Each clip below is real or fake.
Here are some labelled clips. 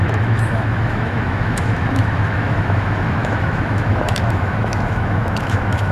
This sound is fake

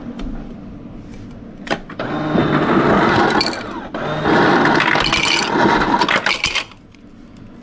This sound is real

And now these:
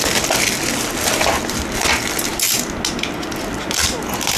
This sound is real